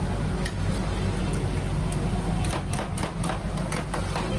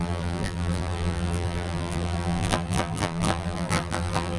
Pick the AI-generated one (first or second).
second